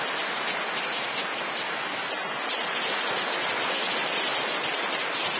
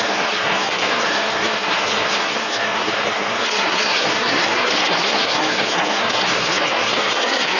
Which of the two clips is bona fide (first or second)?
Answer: first